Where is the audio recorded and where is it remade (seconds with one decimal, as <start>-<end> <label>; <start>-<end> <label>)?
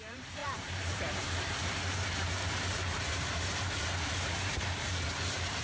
0.0-5.6 remade